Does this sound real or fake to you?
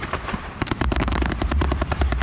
fake